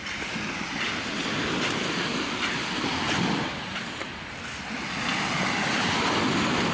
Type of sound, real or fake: real